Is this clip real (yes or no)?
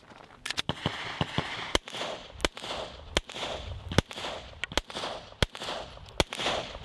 yes